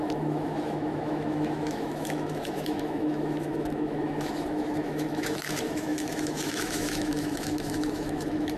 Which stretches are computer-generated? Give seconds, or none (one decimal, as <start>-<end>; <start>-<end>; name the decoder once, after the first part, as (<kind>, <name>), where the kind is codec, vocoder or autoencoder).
0.0-8.6 (autoencoder, DAC-VAE)